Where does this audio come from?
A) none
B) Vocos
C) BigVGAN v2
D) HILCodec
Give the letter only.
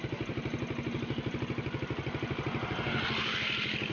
A